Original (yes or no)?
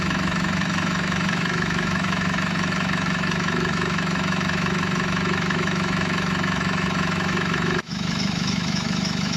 no